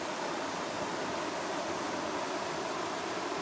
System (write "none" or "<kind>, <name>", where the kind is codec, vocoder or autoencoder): none